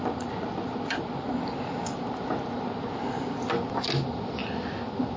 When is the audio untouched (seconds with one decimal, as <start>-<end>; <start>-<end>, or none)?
0.0-5.2